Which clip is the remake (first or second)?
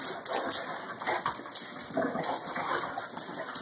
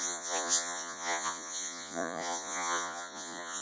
second